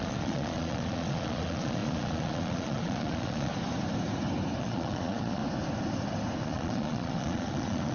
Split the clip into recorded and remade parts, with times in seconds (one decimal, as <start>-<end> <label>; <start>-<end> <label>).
0.0-3.5 remade; 3.5-4.6 recorded; 4.6-5.4 remade; 5.4-6.4 recorded; 6.4-7.9 remade